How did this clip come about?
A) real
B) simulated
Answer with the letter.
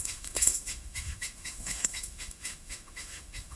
B